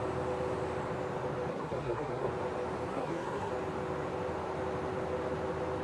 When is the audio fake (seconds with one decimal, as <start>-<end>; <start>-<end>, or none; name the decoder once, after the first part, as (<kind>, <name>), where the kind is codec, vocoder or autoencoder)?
1.5-2.3 (codec, SNAC); 2.9-3.5